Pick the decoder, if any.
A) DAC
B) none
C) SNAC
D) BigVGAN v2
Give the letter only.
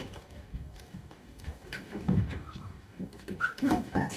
A